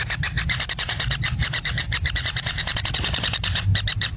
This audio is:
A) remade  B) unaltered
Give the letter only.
A